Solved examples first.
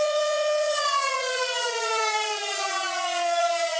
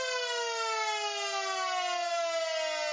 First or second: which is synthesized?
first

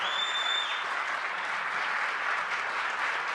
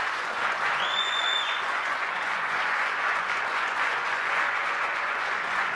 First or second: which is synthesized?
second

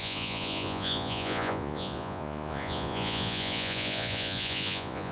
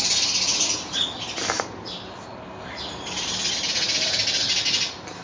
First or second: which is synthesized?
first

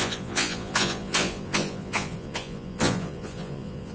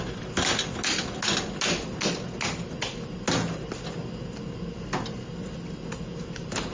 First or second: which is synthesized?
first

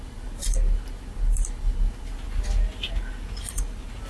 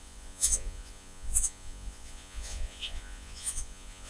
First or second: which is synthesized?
second